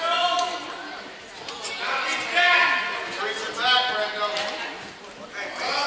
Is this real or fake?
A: real